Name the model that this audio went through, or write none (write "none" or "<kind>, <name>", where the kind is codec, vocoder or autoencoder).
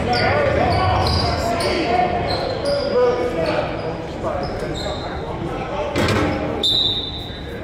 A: none